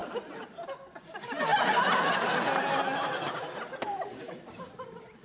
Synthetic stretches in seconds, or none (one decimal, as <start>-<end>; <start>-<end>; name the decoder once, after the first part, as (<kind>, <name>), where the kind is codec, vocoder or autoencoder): none